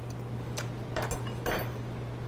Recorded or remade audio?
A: recorded